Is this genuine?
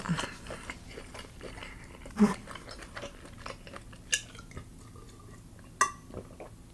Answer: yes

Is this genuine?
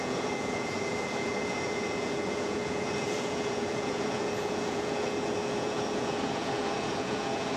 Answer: no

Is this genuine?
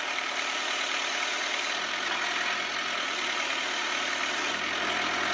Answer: no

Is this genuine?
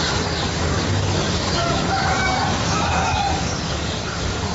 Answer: no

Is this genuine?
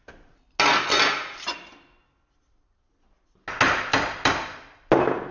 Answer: yes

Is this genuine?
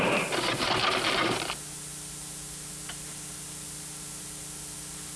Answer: yes